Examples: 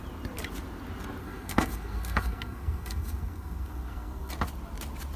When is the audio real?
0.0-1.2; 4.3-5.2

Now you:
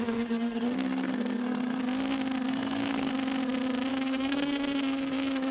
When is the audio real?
1.8-2.5; 3.1-3.9